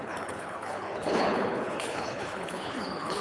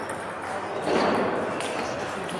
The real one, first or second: second